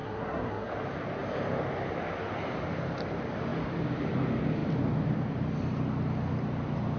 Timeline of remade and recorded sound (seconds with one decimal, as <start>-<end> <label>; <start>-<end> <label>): 0.0-0.7 remade; 0.7-7.0 recorded

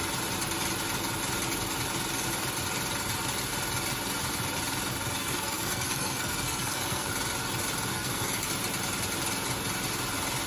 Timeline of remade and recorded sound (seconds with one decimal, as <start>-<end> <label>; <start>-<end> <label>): 0.0-5.2 recorded; 5.2-7.1 remade; 7.1-7.9 recorded; 7.9-8.5 remade; 8.5-10.5 recorded

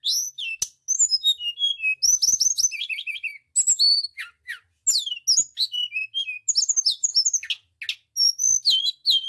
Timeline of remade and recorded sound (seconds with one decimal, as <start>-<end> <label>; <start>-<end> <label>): 0.0-9.3 recorded

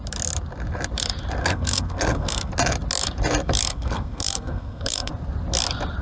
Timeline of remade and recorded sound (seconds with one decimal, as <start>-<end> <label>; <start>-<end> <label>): 0.0-1.4 recorded; 1.4-2.5 remade; 2.5-3.7 recorded; 3.7-5.1 remade; 5.1-6.0 recorded

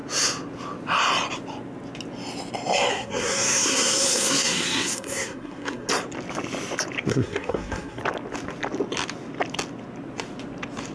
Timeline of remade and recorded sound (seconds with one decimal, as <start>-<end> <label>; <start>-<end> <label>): 0.0-2.9 recorded; 2.9-5.9 remade; 5.9-7.1 recorded; 7.1-8.0 remade; 8.0-10.9 recorded

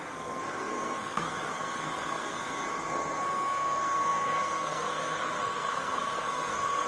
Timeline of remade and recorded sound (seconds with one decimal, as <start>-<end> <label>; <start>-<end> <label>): 0.0-6.9 remade

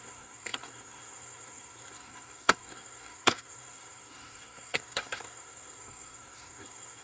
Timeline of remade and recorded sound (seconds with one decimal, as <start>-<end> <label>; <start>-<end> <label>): 0.0-7.0 remade